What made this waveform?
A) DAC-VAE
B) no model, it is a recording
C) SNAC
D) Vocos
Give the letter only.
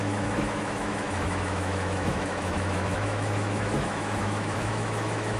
A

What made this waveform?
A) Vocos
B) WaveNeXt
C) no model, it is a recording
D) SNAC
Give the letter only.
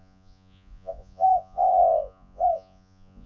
A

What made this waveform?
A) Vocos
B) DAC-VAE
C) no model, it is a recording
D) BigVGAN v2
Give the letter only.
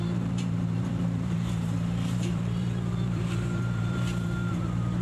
D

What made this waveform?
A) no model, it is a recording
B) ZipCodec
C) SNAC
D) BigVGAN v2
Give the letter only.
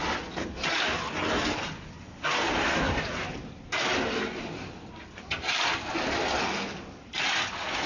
A